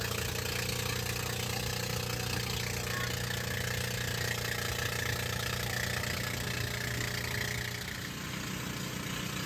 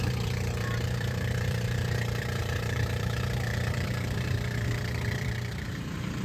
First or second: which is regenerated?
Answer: second